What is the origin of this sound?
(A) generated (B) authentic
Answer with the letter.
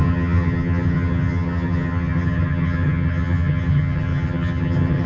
A